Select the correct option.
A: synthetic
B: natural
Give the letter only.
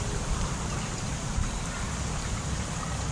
A